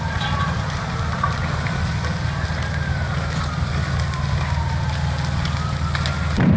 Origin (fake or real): real